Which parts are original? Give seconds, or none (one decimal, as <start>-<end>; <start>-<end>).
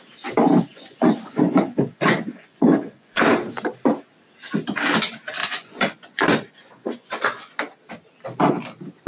0.0-0.7; 3.2-5.4; 7.5-9.1